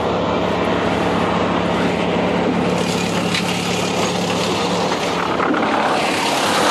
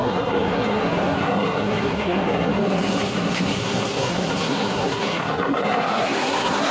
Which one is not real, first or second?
second